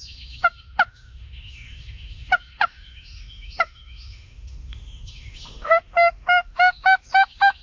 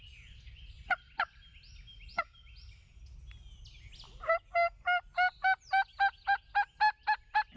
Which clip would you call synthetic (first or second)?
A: first